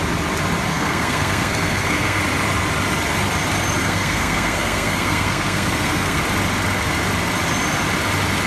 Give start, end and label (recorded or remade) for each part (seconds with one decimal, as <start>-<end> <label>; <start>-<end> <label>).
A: 0.0-0.7 recorded; 0.7-2.2 remade; 2.2-3.8 recorded; 3.8-6.2 remade; 6.2-8.5 recorded